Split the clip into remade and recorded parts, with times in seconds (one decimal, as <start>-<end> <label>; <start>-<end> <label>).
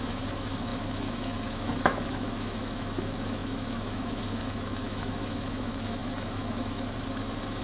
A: 0.0-7.6 remade